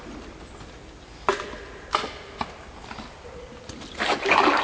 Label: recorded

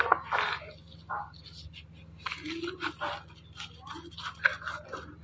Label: recorded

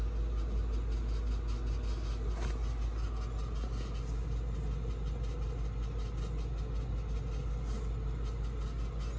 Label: recorded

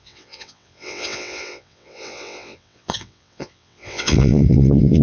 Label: remade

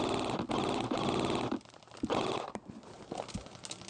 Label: recorded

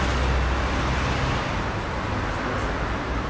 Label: recorded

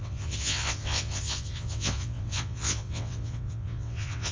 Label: remade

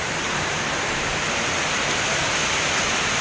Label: recorded